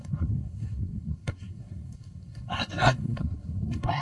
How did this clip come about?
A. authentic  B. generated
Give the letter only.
B